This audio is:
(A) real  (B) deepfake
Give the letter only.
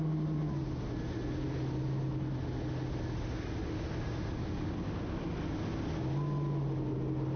A